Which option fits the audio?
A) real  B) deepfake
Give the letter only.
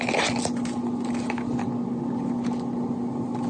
A